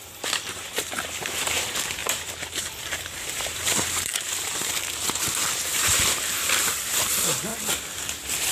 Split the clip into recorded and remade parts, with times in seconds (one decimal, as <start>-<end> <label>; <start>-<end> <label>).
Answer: 0.0-7.5 remade; 7.5-8.0 recorded; 8.0-8.5 remade